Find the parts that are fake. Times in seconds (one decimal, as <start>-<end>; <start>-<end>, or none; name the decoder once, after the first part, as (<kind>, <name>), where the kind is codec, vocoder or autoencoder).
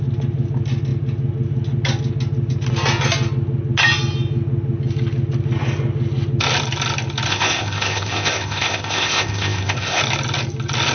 7.3-10.0 (codec, ZipCodec)